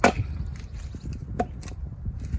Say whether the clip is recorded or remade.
recorded